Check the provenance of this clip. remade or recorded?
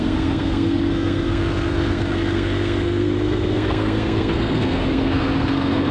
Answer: remade